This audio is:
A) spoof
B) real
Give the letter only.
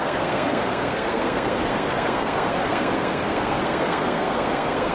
A